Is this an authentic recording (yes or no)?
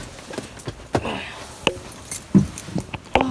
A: yes